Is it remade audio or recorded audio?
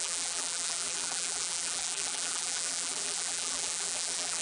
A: remade